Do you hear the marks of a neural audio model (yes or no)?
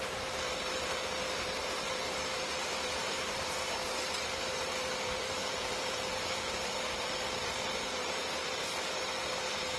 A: yes